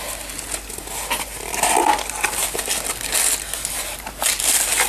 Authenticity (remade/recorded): recorded